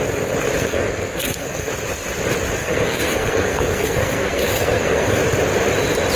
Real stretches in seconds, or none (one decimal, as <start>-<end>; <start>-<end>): 0.0-0.6; 1.7-2.6; 5.2-6.2

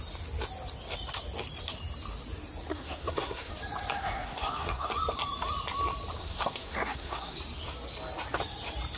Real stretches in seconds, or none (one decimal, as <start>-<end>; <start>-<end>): 0.0-2.7; 3.5-4.0; 4.9-6.2; 7.4-9.0

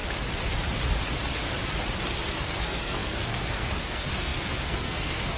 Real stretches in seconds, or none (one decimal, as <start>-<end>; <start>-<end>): 0.0-2.3

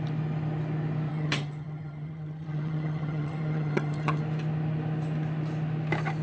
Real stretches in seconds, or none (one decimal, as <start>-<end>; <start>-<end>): 0.0-1.1; 4.2-6.2

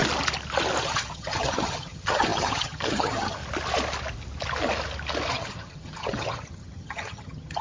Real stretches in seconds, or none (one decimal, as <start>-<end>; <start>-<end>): 0.0-0.8; 3.4-5.3

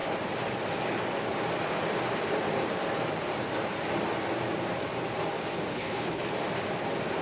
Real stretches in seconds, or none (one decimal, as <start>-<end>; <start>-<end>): 0.0-5.7; 6.2-7.2

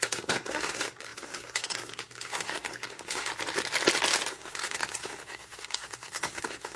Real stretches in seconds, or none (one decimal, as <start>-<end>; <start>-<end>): 3.3-4.3

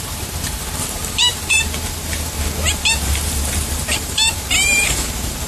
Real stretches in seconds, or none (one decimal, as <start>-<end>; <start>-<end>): none